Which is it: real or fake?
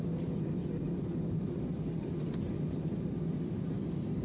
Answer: real